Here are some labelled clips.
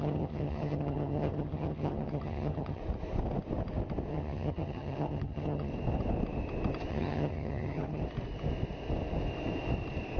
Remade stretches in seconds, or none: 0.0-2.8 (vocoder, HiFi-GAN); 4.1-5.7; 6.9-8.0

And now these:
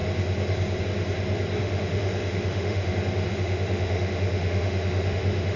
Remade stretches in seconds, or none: 1.6-2.9 (autoencoder, DAC-VAE); 3.3-5.6

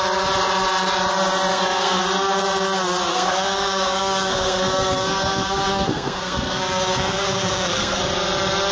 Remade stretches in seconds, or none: 1.5-2.0 (codec, SNAC); 3.1-8.0

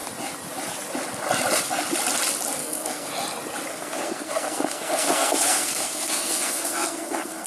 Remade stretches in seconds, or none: 2.6-3.1 (codec, SNAC); 3.7-7.5

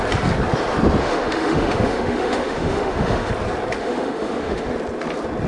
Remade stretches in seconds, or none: 1.0-3.3 (autoencoder, DAC-VAE); 3.8-4.7

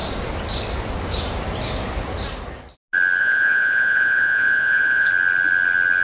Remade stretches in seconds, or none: 3.2-5.1 (vocoder, Vocos)

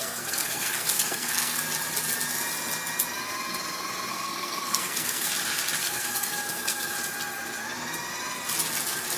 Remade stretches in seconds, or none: 0.0-1.6 (codec, SNAC); 4.1-5.3; 5.8-6.9

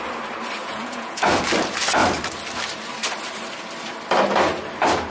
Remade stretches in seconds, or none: 0.6-1.2 (vocoder, Vocos)